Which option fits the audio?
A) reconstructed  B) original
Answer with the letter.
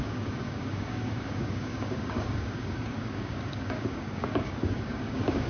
A